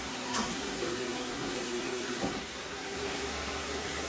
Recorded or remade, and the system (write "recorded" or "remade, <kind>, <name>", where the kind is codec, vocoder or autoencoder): remade, codec, SNAC